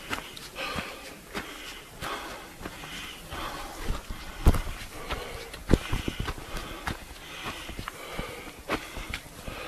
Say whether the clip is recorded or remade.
recorded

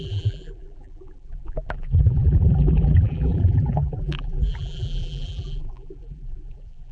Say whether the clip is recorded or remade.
remade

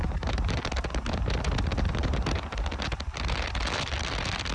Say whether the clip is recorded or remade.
remade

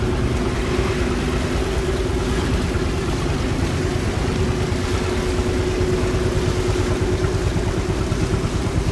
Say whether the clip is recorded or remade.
recorded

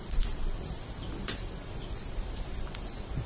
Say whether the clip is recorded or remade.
remade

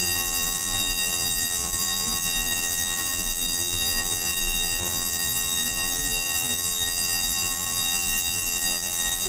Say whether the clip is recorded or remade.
remade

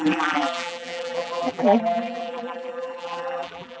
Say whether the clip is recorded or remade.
remade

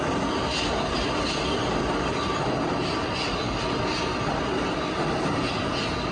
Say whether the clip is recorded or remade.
recorded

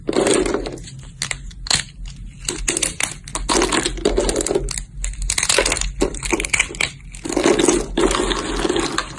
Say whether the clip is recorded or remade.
recorded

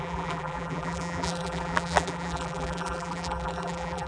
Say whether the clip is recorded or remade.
remade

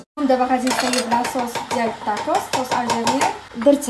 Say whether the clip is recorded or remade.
recorded